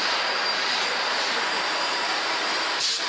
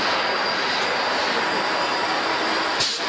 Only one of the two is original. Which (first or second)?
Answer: second